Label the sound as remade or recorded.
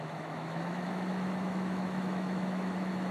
remade